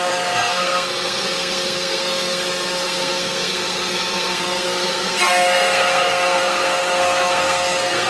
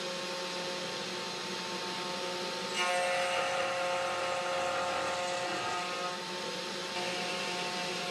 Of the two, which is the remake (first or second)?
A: first